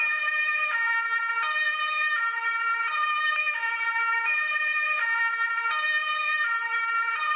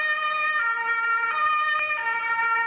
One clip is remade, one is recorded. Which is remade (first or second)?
first